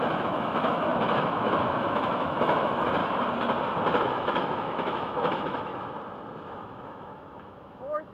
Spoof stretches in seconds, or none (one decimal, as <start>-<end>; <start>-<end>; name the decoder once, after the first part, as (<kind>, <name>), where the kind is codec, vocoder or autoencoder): 0.0-3.0 (autoencoder, DAC-VAE); 4.0-5.7; 6.5-8.1